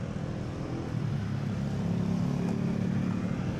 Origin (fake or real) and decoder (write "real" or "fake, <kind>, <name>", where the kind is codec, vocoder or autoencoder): real